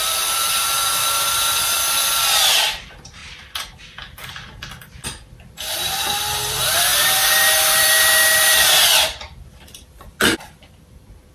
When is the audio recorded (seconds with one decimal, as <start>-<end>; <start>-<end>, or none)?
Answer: none